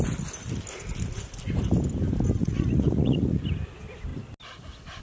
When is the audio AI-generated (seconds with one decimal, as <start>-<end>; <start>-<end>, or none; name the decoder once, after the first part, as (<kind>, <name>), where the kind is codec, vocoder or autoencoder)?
2.4-3.4 (vocoder, Vocos)

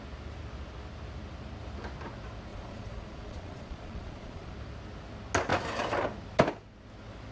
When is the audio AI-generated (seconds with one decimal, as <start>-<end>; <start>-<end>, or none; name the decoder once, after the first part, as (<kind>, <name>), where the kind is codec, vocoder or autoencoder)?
2.5-4.5 (vocoder, Vocos)

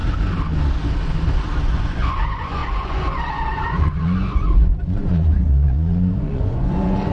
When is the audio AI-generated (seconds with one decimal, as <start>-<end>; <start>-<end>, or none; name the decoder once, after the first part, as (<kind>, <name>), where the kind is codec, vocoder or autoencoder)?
1.7-7.1 (vocoder, Vocos)

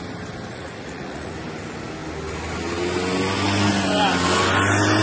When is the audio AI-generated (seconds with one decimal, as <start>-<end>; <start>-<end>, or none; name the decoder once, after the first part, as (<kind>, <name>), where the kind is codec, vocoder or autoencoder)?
0.5-1.3 (vocoder, Vocos)

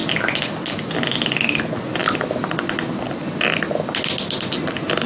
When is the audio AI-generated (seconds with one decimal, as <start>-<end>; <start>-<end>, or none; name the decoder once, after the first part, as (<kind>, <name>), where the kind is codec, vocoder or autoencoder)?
none

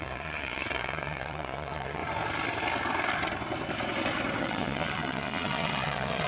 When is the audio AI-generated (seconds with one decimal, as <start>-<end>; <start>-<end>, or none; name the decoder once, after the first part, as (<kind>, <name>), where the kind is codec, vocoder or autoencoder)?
0.0-2.0 (vocoder, Vocos); 4.4-6.3

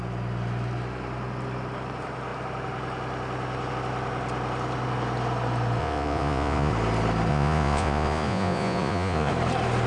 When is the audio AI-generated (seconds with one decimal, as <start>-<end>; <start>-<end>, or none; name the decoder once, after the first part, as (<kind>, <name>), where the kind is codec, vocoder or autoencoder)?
5.8-6.7 (vocoder, Vocos); 7.3-9.3